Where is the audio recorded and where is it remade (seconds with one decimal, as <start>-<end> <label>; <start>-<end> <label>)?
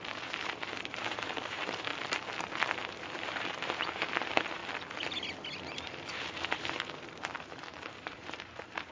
0.0-1.9 remade; 1.9-2.8 recorded; 2.8-4.6 remade; 4.6-6.1 recorded; 6.1-8.9 remade